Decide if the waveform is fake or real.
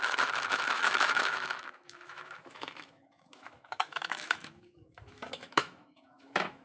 fake